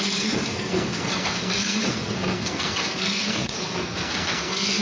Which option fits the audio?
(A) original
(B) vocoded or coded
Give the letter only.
B